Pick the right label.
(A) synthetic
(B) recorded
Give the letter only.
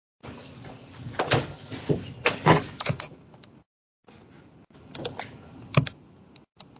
B